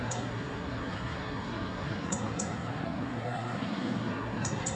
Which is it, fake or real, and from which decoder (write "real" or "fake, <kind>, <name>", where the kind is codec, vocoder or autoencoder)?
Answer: fake, codec, SNAC